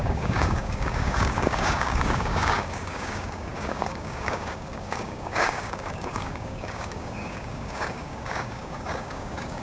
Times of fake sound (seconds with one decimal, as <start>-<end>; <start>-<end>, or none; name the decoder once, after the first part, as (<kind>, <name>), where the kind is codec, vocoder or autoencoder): 0.0-9.6 (codec, DAC)